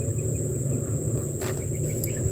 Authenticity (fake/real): real